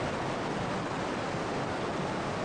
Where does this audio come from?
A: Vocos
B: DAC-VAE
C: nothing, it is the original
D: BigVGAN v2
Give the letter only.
C